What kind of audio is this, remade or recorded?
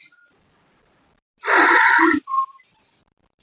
recorded